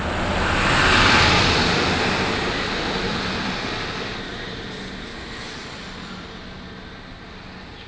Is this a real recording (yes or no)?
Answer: no